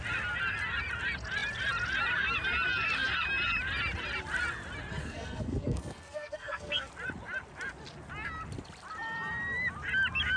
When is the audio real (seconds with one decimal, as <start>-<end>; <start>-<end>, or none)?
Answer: 0.0-5.0; 6.9-10.4